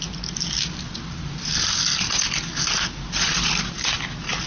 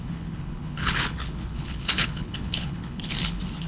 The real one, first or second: first